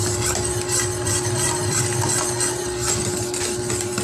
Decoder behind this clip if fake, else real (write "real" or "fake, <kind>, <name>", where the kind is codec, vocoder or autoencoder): fake, vocoder, BigVGAN v2